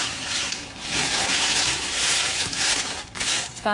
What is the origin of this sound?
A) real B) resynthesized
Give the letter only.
B